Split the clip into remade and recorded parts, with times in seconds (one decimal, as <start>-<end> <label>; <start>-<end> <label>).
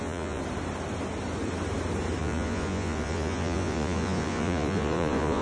0.0-0.4 remade; 0.4-2.2 recorded; 2.2-5.4 remade